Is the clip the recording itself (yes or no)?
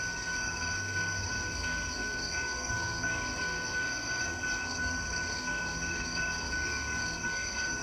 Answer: no